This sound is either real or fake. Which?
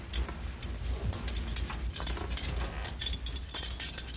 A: real